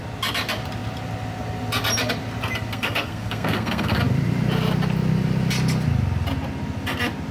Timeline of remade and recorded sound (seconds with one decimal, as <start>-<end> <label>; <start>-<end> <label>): 0.0-2.7 recorded; 2.7-4.0 remade; 4.0-7.3 recorded